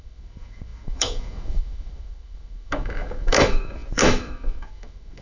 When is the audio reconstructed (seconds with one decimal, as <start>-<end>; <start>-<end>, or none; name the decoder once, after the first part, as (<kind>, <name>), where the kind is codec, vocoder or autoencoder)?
0.0-5.2 (autoencoder, DAC-VAE)